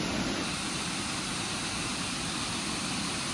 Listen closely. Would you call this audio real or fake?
real